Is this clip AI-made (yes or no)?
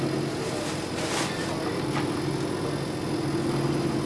no